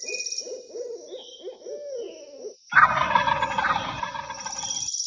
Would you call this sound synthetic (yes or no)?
no